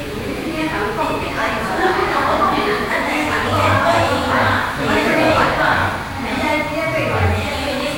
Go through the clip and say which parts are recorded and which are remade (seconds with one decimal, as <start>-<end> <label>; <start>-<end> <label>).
0.0-5.8 remade; 5.8-7.5 recorded; 7.5-8.0 remade